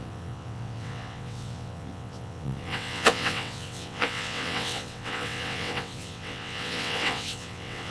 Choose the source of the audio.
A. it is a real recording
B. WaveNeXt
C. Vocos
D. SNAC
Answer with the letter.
B